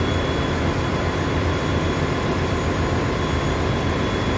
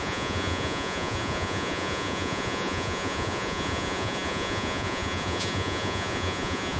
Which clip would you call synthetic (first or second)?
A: second